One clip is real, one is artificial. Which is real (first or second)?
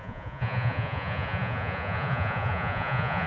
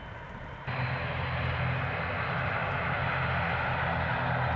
second